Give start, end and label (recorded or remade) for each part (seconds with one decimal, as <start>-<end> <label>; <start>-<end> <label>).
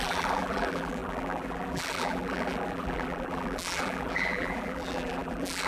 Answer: 0.0-5.7 remade